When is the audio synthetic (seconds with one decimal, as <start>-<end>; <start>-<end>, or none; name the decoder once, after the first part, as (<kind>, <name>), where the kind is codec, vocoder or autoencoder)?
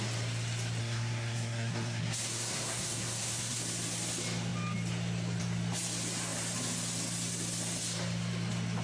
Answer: 0.8-3.6 (codec, SNAC)